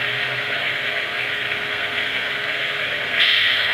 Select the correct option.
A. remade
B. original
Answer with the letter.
A